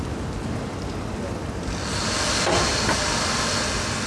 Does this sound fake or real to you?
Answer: real